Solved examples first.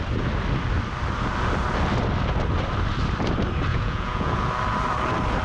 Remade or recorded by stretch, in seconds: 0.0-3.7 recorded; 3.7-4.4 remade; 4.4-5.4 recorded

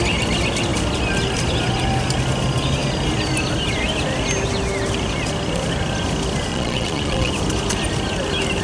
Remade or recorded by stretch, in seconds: 0.0-6.5 recorded; 6.5-7.3 remade; 7.3-8.6 recorded